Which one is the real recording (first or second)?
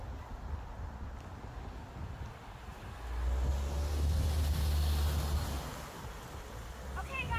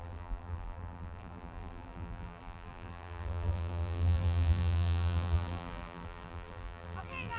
first